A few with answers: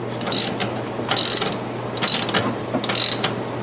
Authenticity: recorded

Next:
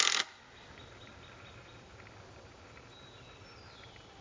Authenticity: recorded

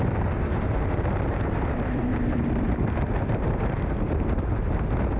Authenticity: remade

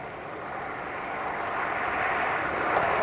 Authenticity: recorded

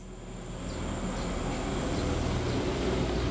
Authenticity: recorded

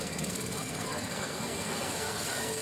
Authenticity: remade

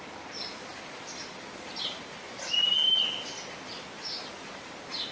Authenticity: recorded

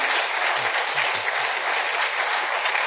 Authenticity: recorded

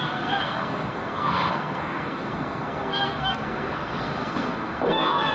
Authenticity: remade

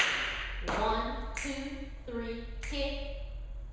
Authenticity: recorded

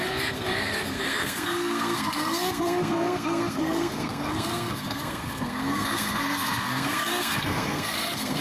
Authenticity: remade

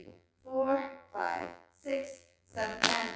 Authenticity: remade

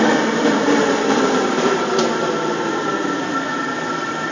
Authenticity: remade